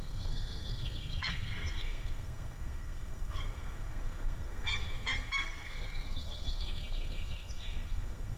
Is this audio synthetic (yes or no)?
yes